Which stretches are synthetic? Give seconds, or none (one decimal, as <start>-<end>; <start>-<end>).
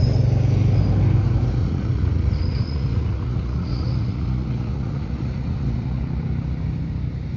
1.6-6.0